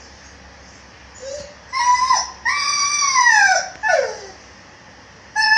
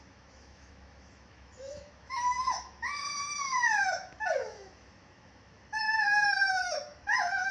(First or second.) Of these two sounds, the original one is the first